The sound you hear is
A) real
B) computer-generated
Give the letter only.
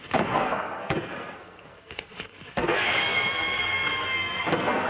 B